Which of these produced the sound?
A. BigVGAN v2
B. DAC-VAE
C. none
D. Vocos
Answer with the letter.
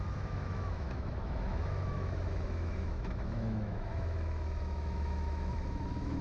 B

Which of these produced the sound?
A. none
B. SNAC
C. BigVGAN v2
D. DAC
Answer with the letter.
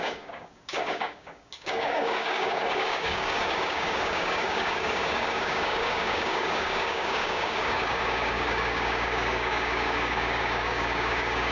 D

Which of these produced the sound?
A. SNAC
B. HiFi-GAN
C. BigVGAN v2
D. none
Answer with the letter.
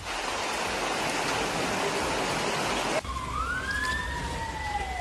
D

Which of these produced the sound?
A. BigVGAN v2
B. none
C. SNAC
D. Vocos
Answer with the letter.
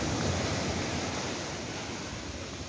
B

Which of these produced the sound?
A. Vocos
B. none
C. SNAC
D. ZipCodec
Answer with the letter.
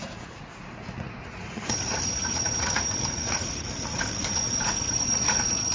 A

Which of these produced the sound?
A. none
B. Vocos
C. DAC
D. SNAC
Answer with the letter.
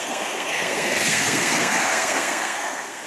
D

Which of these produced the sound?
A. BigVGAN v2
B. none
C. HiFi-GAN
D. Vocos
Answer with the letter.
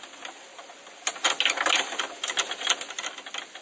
B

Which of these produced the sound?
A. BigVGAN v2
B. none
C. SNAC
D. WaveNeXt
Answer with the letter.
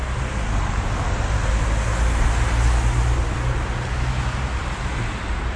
B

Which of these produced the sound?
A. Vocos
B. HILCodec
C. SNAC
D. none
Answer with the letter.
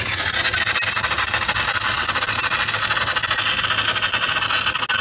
D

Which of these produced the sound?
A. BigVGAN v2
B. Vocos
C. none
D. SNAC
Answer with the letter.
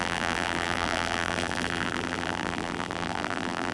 A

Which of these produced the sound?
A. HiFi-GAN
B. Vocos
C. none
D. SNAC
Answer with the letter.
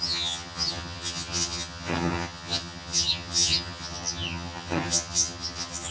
A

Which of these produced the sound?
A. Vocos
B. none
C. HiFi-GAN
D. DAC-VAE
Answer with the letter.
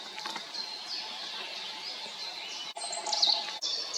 B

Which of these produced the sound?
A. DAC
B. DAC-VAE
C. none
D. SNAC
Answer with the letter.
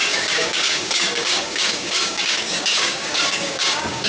A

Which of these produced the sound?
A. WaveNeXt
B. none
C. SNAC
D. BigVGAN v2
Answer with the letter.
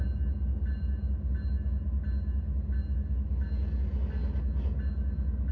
B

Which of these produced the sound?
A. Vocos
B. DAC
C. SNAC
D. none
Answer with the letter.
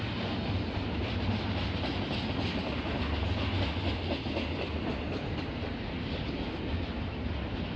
D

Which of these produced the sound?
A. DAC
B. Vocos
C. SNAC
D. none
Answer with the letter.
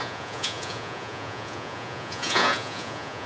B